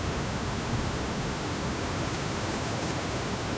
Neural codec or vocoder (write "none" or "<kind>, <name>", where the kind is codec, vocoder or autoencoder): autoencoder, DAC-VAE